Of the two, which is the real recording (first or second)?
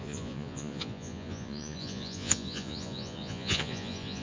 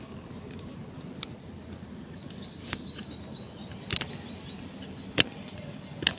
second